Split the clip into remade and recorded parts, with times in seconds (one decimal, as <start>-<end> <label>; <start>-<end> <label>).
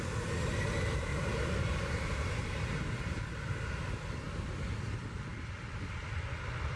0.0-1.1 recorded; 1.1-3.0 remade; 3.0-6.8 recorded